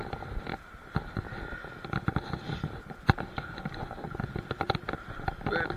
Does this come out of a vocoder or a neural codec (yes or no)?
no